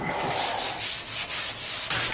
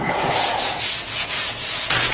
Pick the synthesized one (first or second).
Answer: second